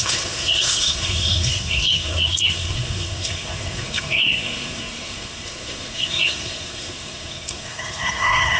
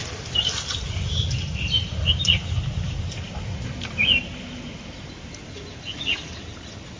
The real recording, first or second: second